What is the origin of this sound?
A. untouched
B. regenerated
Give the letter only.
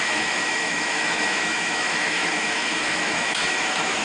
B